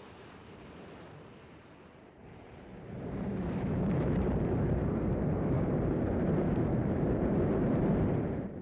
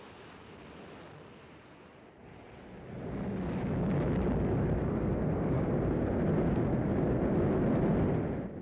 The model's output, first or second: first